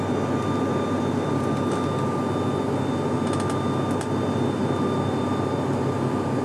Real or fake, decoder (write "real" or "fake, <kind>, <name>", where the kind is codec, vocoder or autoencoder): real